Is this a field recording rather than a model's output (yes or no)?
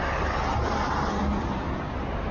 yes